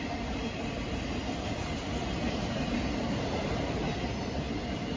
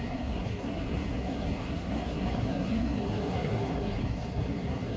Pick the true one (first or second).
first